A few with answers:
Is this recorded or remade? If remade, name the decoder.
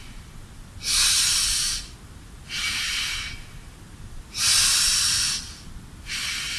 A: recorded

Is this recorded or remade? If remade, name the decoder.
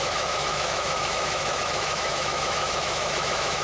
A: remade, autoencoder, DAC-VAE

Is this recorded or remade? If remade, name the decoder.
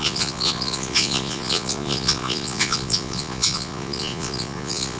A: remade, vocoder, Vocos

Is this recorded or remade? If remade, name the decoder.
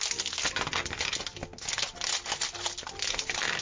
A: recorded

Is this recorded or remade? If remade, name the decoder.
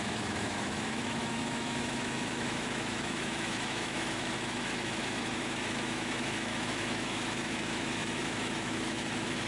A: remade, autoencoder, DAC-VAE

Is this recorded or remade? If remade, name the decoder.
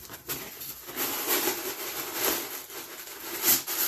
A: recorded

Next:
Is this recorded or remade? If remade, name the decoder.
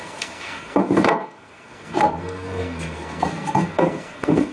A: remade, codec, SNAC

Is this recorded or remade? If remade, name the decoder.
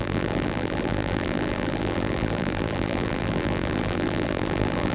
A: remade, vocoder, BigVGAN v2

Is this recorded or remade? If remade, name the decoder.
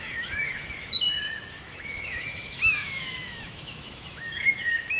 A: remade, autoencoder, DAC-VAE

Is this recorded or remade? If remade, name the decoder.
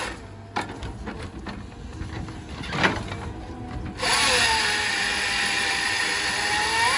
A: recorded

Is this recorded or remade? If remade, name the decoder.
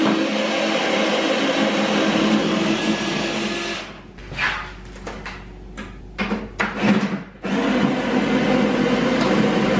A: recorded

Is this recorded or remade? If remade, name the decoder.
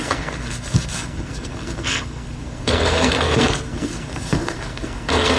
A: remade, codec, SNAC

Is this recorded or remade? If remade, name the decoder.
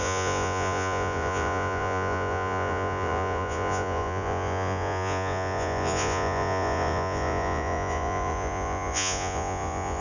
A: remade, vocoder, Vocos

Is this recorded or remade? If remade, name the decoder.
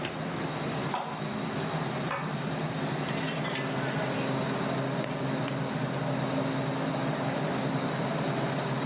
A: recorded